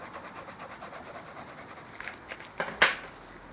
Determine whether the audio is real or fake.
real